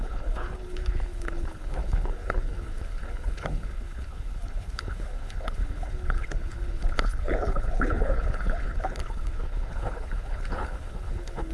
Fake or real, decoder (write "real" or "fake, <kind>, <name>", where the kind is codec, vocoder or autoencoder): fake, codec, HILCodec